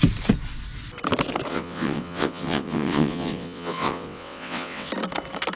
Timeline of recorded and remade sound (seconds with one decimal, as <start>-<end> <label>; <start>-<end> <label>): 0.0-1.5 recorded; 1.5-4.9 remade; 4.9-5.6 recorded